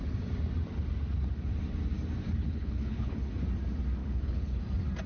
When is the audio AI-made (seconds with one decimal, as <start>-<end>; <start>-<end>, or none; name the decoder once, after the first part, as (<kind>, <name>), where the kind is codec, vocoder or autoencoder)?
2.4-3.3 (codec, HILCodec); 4.0-4.6